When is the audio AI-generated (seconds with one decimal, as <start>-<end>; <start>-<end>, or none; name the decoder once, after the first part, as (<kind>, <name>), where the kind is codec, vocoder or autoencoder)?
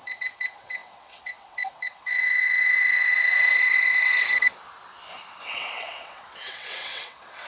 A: 0.0-4.5 (vocoder, WaveNeXt); 5.4-7.5